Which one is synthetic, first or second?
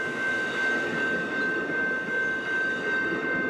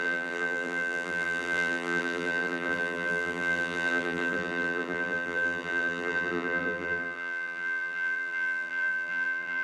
second